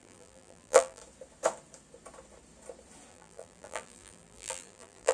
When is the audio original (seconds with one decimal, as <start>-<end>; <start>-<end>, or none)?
1.0-3.1